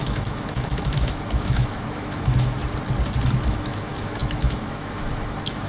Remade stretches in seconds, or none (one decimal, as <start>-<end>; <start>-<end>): 0.0-2.6; 3.4-5.7

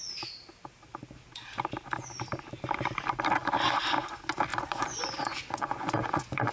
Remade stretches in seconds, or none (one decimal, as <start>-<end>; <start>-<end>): 4.5-6.5